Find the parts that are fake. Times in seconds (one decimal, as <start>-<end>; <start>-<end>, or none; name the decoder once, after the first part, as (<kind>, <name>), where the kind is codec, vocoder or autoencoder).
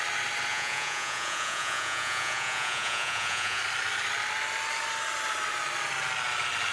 0.5-3.6 (vocoder, Vocos)